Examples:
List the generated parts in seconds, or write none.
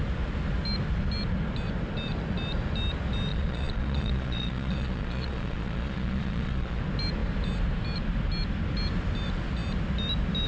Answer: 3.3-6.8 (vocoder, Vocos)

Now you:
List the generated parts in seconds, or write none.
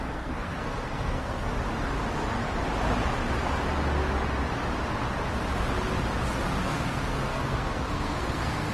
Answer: 0.0-1.5 (codec, SNAC); 6.6-8.7